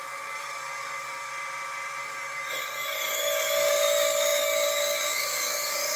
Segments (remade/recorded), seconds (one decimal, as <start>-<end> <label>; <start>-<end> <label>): 0.0-1.3 remade; 1.3-2.0 recorded; 2.0-6.0 remade